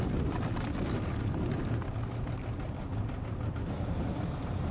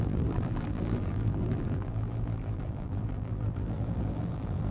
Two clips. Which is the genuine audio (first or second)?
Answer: first